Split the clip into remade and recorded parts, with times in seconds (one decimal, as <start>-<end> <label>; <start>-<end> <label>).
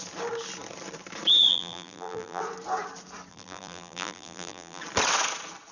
0.0-1.5 recorded; 1.5-2.4 remade; 2.4-3.3 recorded; 3.3-4.8 remade; 4.8-5.7 recorded